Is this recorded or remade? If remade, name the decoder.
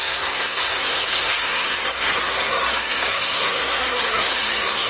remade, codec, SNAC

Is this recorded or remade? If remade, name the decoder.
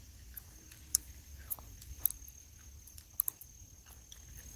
recorded